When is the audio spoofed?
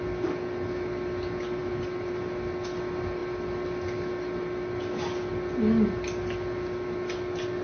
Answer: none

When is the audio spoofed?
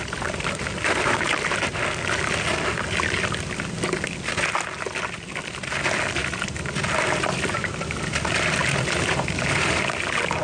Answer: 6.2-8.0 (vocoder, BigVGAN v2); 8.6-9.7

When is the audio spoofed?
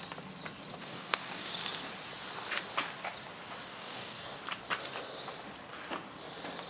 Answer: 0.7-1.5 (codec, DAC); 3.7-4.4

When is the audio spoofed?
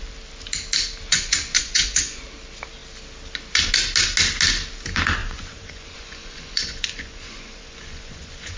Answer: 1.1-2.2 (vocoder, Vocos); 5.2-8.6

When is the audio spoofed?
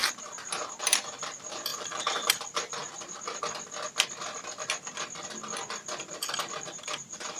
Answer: 0.0-2.8 (vocoder, BigVGAN v2); 6.1-7.4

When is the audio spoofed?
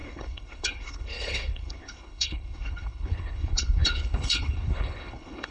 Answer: 0.0-5.5 (codec, HILCodec)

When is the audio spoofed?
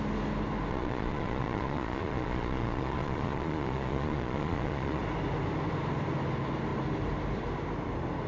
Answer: 0.7-5.0 (vocoder, Vocos)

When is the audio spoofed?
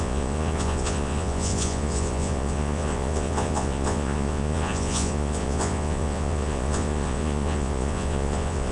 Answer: 0.0-8.7 (vocoder, Vocos)